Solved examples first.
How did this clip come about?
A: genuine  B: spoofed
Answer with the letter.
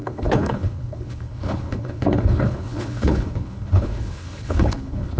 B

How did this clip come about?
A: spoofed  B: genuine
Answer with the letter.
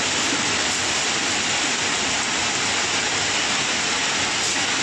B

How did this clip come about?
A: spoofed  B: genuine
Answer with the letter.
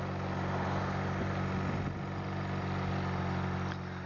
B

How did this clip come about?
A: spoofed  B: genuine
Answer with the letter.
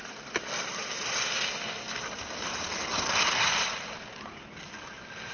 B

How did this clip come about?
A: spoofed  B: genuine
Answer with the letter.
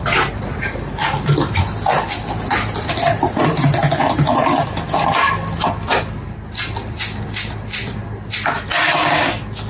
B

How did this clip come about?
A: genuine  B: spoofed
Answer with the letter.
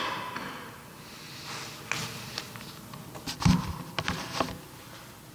A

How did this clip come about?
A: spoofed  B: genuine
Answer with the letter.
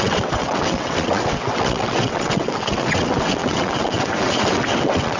A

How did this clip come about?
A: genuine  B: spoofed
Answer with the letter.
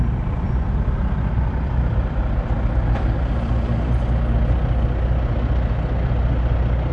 A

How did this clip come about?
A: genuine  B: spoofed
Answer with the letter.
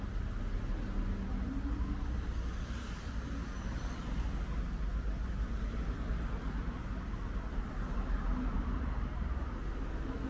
A